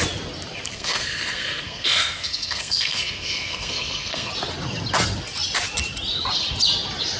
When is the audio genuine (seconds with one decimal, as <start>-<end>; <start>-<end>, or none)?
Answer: 0.0-0.7; 4.3-7.2